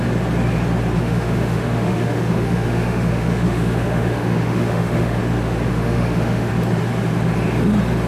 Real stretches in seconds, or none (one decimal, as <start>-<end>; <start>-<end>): 0.0-1.0; 5.2-5.7; 6.5-8.1